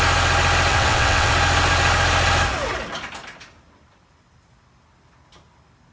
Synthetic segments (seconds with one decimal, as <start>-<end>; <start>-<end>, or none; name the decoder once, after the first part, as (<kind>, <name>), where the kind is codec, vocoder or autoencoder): 0.7-1.3 (vocoder, WaveNeXt)